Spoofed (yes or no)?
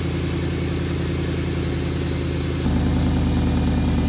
no